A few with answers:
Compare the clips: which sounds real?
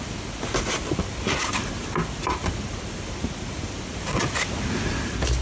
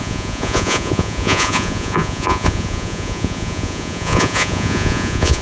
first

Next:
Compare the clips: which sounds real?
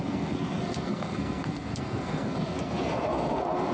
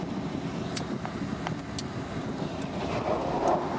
second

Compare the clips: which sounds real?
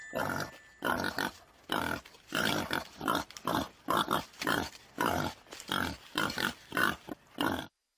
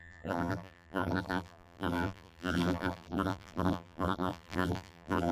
first